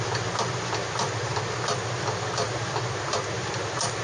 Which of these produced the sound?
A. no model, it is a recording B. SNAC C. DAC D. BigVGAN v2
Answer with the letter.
A